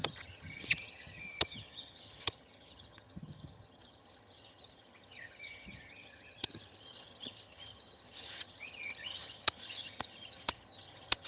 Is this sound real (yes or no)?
no